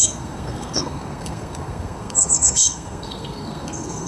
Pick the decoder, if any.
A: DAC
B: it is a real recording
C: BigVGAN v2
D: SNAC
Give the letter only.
D